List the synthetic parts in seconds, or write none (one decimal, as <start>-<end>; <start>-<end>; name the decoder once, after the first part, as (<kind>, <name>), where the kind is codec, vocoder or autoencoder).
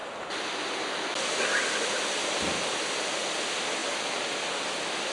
none